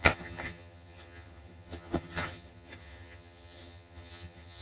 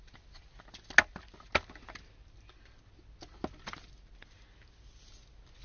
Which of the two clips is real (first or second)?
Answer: second